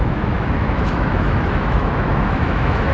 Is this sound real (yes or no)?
no